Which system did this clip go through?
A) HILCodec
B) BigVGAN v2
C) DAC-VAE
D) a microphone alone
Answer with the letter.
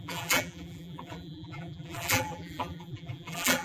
B